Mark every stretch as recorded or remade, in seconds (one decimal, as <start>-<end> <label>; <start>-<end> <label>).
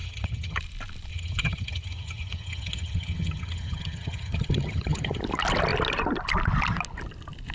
0.0-0.6 remade; 0.6-1.1 recorded; 1.1-5.2 remade; 5.2-7.5 recorded